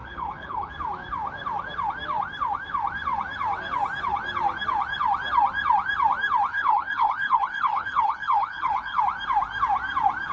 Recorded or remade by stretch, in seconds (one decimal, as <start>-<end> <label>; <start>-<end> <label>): 0.0-0.7 remade; 0.7-6.5 recorded; 6.5-9.0 remade; 9.0-10.3 recorded